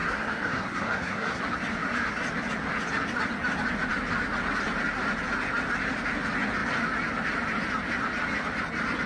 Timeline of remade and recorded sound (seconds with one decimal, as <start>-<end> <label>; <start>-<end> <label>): 0.0-1.4 remade; 1.4-9.1 recorded

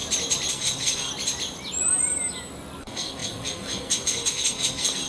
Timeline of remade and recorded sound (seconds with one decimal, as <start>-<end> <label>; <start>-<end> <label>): 0.0-0.5 recorded; 0.5-1.1 remade; 1.1-2.8 recorded; 2.8-5.1 remade

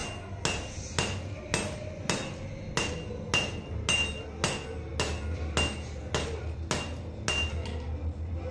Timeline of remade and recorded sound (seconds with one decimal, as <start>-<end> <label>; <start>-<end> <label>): 0.0-8.5 recorded

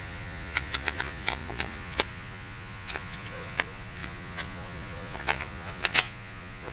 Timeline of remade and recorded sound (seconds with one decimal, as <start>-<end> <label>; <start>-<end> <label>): 0.0-6.7 remade

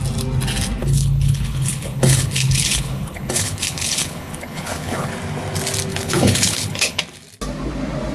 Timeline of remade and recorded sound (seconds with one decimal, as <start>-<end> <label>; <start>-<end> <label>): 0.0-0.8 recorded; 0.8-5.1 remade; 5.1-5.9 recorded; 5.9-7.0 remade; 7.0-8.1 recorded